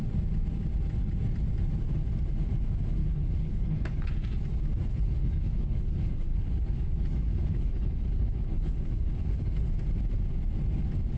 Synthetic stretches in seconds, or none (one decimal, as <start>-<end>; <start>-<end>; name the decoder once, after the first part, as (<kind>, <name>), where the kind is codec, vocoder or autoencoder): 3.0-4.1 (codec, HILCodec); 4.9-9.7